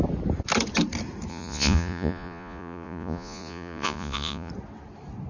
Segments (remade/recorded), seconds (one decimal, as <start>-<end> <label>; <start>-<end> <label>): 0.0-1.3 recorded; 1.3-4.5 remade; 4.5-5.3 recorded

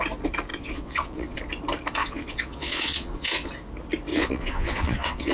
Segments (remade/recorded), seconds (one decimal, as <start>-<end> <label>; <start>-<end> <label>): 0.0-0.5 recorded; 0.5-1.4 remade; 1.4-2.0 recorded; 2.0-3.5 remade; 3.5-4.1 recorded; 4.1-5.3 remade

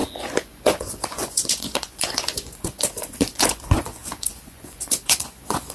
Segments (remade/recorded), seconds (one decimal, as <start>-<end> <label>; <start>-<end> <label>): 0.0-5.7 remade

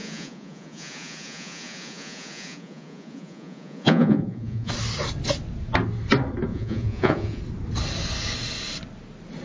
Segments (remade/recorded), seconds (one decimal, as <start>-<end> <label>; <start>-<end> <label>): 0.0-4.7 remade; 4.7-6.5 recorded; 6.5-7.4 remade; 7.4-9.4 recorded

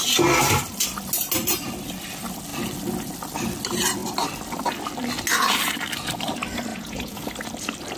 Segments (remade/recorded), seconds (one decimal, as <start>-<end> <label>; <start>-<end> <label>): 0.0-6.7 recorded; 6.7-7.3 remade; 7.3-8.0 recorded

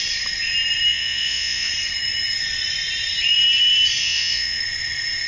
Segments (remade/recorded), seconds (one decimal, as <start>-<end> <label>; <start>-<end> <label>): 0.0-0.9 recorded; 0.9-1.7 remade; 1.7-4.0 recorded; 4.0-4.6 remade; 4.6-5.3 recorded